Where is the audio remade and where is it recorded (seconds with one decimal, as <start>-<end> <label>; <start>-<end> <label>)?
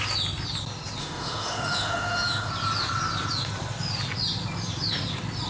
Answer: 0.0-1.0 recorded; 1.0-2.5 remade; 2.5-5.5 recorded